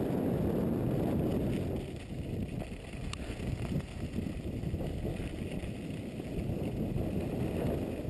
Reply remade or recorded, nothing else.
recorded